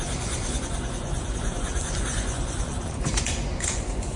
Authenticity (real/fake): fake